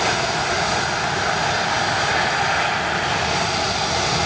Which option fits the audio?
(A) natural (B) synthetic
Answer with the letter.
A